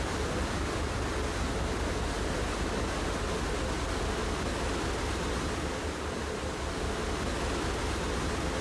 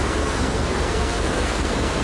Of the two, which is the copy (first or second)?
second